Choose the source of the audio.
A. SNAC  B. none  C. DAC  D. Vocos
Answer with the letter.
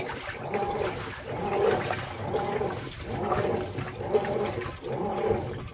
B